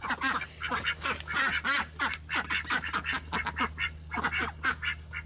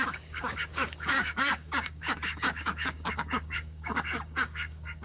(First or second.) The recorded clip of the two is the first